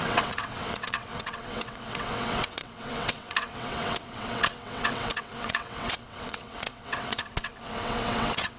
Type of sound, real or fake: fake